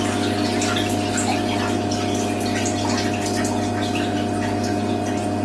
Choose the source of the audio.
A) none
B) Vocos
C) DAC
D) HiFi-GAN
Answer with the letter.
A